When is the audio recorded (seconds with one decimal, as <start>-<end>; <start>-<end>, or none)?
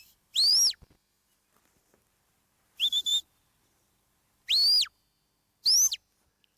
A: 0.0-6.6